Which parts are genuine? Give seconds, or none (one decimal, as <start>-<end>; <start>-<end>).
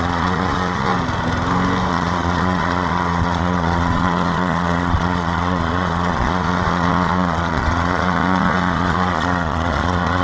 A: 0.9-1.9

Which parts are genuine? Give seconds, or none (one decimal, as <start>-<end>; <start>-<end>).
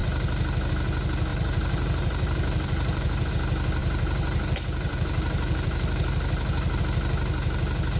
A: 0.0-1.3; 3.3-3.8; 6.8-8.0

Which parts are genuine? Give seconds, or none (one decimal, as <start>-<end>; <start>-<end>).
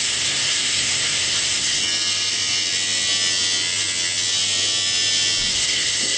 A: 1.8-5.5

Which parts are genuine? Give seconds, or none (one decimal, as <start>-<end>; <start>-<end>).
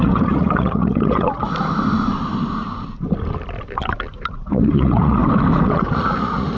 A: 1.4-4.1; 5.2-5.7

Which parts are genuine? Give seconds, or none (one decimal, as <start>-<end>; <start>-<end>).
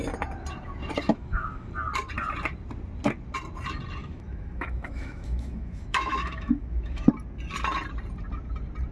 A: 0.0-1.1; 1.7-4.0; 7.1-8.9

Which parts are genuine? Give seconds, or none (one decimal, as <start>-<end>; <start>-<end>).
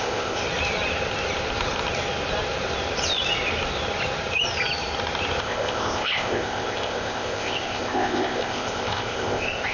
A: 0.4-5.4